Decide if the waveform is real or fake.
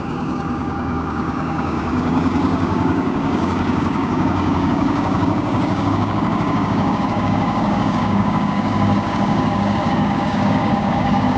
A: fake